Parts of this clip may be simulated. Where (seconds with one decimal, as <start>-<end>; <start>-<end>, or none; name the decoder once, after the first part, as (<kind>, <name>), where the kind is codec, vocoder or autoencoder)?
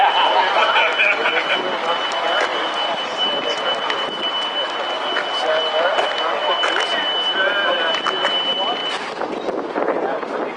1.2-1.9 (vocoder, BigVGAN v2)